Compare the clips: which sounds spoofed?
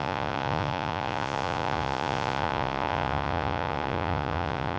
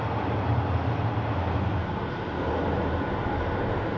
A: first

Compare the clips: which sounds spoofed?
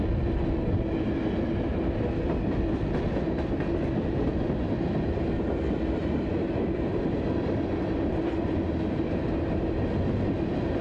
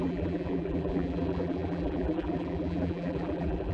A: second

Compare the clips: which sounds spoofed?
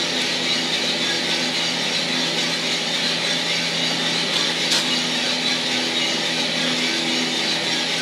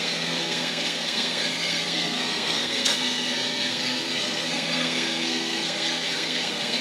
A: second